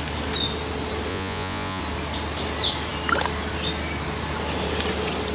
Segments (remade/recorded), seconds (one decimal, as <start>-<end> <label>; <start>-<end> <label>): 0.0-1.1 recorded; 1.1-1.8 remade; 1.8-5.3 recorded